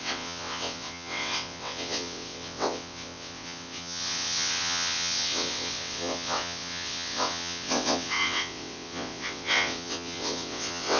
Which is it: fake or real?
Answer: fake